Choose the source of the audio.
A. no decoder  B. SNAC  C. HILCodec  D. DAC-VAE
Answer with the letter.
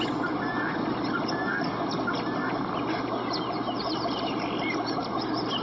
A